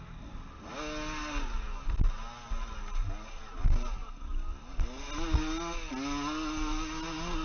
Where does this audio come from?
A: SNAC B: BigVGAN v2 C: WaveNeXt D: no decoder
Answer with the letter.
D